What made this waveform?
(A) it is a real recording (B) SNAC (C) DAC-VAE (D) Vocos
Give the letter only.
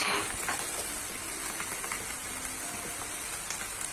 A